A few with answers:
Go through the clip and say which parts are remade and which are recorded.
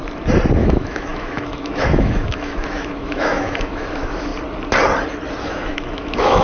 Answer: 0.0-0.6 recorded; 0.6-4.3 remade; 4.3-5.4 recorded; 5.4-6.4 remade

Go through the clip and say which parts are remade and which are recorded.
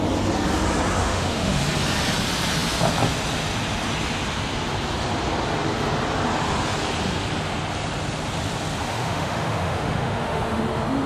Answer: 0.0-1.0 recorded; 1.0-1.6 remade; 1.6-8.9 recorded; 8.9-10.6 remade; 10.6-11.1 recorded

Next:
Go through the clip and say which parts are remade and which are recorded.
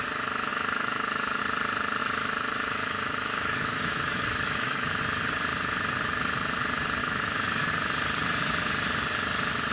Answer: 0.0-0.5 recorded; 0.5-1.4 remade; 1.4-2.0 recorded; 2.0-5.0 remade; 5.0-7.0 recorded; 7.0-7.7 remade; 7.7-9.7 recorded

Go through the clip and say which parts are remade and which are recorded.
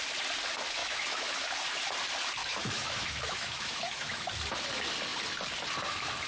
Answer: 0.0-0.8 recorded; 0.8-1.3 remade; 1.3-2.4 recorded; 2.4-4.3 remade; 4.3-6.3 recorded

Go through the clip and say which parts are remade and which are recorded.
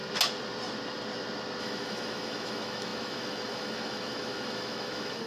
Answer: 0.0-1.6 recorded; 1.6-5.3 remade